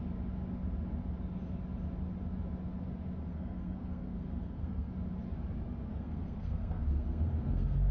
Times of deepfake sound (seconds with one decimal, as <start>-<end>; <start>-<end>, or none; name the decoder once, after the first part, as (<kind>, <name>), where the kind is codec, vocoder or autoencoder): 3.3-4.9 (codec, SNAC); 5.9-7.9